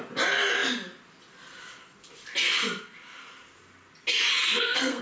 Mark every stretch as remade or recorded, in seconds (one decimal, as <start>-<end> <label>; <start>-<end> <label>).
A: 0.0-4.4 recorded; 4.4-5.0 remade

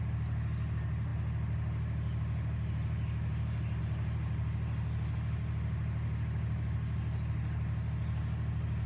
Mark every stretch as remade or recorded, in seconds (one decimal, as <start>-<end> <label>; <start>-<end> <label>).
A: 0.0-8.9 recorded

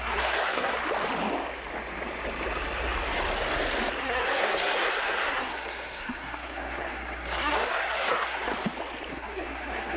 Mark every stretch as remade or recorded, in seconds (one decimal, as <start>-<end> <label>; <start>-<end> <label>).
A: 0.0-0.8 remade; 0.8-4.0 recorded; 4.0-8.5 remade; 8.5-9.1 recorded; 9.1-10.0 remade

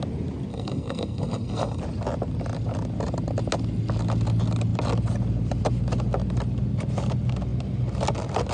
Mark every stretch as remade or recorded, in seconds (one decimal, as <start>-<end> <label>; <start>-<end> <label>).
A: 0.0-0.5 recorded; 0.5-1.8 remade; 1.8-8.5 recorded

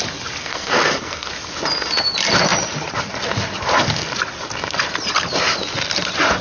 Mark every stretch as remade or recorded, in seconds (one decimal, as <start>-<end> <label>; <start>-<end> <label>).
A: 0.0-0.4 recorded; 0.4-1.3 remade; 1.3-6.4 recorded

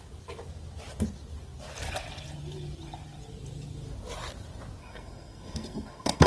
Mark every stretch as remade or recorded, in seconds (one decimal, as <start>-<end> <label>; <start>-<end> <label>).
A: 0.0-4.8 recorded; 4.8-6.3 remade

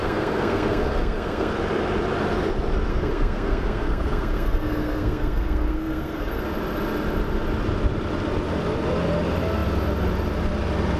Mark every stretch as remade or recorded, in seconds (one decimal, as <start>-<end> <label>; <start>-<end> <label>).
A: 0.0-1.5 remade; 1.5-2.9 recorded; 2.9-6.4 remade; 6.4-11.0 recorded